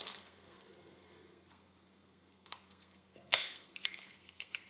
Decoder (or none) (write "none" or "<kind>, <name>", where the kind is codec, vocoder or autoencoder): codec, SNAC